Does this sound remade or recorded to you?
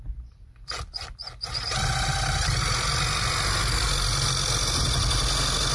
recorded